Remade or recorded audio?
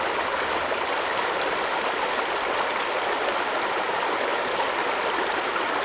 recorded